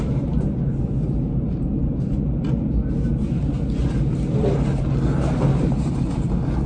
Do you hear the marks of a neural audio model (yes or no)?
no